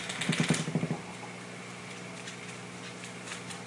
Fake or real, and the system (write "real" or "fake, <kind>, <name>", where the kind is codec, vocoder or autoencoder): real